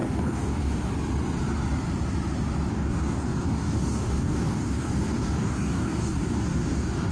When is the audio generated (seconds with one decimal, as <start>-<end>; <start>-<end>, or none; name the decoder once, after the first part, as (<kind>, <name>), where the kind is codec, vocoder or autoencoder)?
0.0-0.9 (codec, DAC); 2.7-7.1